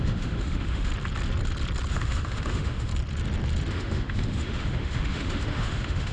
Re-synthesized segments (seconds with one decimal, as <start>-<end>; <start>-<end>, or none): 0.0-0.9; 1.9-2.9; 3.7-6.1